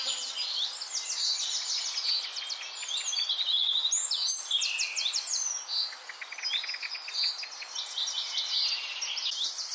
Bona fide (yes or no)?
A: yes